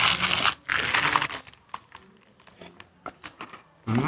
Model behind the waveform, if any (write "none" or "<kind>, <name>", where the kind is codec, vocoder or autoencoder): none